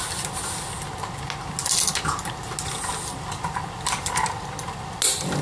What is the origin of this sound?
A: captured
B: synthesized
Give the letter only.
A